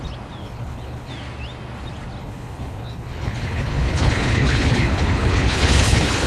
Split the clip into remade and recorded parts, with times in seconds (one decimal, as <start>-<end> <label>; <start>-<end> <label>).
0.0-0.4 recorded; 0.4-1.1 remade; 1.1-2.2 recorded; 2.2-6.3 remade